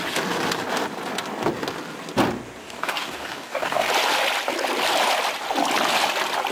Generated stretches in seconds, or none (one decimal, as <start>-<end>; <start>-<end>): 2.6-3.9